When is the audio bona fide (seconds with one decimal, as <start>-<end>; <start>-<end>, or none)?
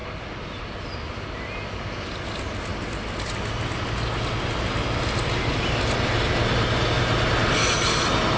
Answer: 0.0-8.4